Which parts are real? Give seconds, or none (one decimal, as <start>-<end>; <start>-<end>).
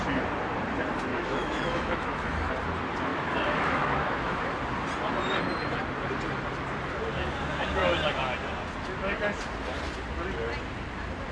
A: 0.0-1.1; 2.5-3.1; 4.4-11.3